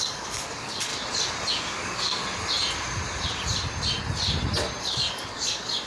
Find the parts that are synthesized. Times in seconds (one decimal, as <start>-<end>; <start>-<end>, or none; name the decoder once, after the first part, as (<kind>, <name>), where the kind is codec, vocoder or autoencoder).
0.0-0.9 (codec, DAC); 1.5-2.2; 4.8-5.9